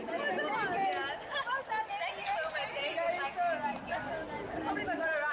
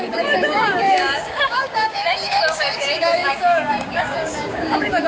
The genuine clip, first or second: first